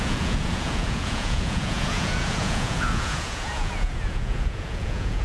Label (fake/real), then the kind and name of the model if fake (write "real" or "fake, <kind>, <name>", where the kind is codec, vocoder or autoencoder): fake, vocoder, Vocos